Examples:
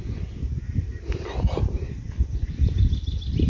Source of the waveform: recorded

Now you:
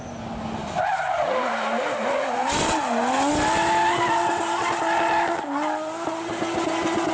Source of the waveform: recorded